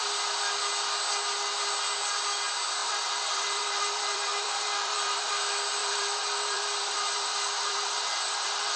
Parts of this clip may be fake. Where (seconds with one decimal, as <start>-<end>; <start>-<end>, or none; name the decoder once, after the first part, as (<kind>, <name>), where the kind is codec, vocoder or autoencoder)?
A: 2.8-5.3 (vocoder, BigVGAN v2); 5.8-8.8